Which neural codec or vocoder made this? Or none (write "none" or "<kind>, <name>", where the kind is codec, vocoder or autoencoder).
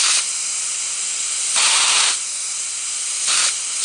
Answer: none